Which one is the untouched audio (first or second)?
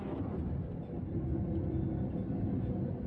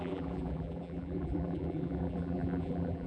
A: first